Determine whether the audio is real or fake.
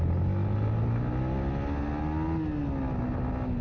real